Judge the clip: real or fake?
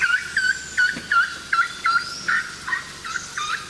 real